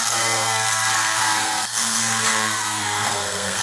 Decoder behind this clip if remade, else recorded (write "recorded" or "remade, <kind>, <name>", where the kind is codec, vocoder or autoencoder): remade, codec, SNAC